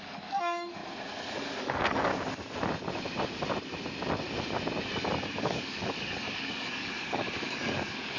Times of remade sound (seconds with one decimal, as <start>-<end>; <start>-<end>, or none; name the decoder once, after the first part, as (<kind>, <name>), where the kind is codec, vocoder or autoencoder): 0.0-0.8 (codec, DAC); 1.6-2.1; 5.4-8.2